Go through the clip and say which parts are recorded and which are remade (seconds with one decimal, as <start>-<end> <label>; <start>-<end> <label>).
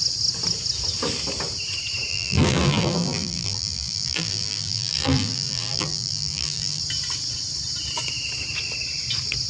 0.0-2.1 recorded; 2.1-6.8 remade; 6.8-9.5 recorded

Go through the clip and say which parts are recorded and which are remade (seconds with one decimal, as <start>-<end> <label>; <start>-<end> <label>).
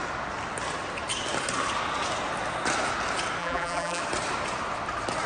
0.0-3.4 recorded; 3.4-4.0 remade; 4.0-5.3 recorded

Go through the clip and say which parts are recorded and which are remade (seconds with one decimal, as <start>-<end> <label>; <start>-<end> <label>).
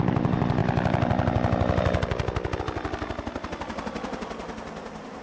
0.0-5.2 recorded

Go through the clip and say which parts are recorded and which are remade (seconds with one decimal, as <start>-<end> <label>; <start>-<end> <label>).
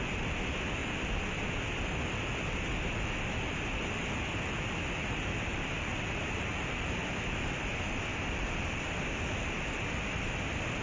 0.0-0.8 recorded; 0.8-2.2 remade; 2.2-5.5 recorded; 5.5-6.1 remade; 6.1-8.1 recorded; 8.1-10.3 remade; 10.3-10.8 recorded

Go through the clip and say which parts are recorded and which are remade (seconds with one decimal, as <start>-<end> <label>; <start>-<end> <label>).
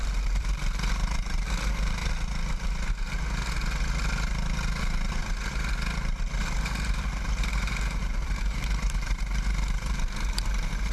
0.0-2.0 remade; 2.0-4.8 recorded; 4.8-5.2 remade; 5.2-6.4 recorded; 6.4-10.9 remade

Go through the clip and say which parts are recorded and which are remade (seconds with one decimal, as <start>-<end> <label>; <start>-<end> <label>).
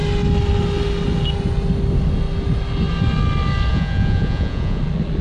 0.0-3.7 recorded; 3.7-4.8 remade; 4.8-5.2 recorded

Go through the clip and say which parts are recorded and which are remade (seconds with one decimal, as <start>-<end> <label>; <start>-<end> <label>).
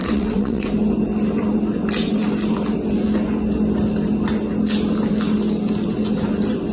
0.0-0.7 remade; 0.7-6.7 recorded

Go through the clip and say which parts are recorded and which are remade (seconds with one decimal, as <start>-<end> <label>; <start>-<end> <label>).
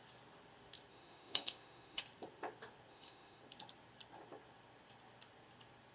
0.0-0.9 recorded; 0.9-2.0 remade; 2.0-2.9 recorded; 2.9-3.4 remade; 3.4-5.9 recorded